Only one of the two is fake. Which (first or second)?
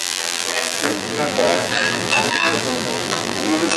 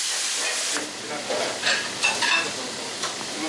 first